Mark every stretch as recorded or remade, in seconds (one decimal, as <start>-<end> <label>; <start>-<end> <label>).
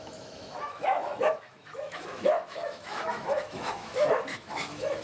0.0-5.0 remade